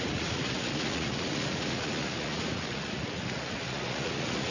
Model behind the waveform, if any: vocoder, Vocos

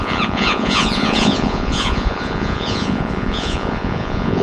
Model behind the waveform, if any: vocoder, Vocos